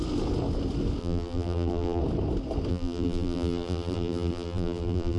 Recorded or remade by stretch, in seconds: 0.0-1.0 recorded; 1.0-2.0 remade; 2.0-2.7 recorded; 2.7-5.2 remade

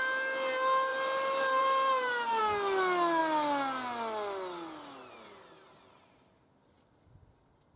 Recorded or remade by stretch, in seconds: 0.0-0.9 recorded; 0.9-2.4 remade; 2.4-7.8 recorded

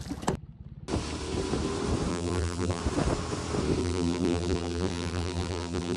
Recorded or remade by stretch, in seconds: 0.0-2.1 recorded; 2.1-2.8 remade; 2.8-3.8 recorded; 3.8-6.0 remade

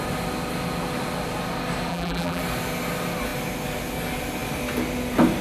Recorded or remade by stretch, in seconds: 0.0-1.9 recorded; 1.9-2.4 remade; 2.4-5.4 recorded

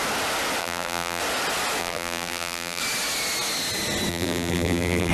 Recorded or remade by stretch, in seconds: 0.0-0.6 recorded; 0.6-1.2 remade; 1.2-1.8 recorded; 1.8-2.8 remade; 2.8-4.1 recorded; 4.1-5.1 remade

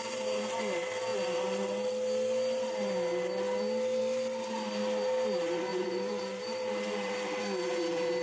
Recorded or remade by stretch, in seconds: 0.0-5.7 recorded; 5.7-7.4 remade; 7.4-8.2 recorded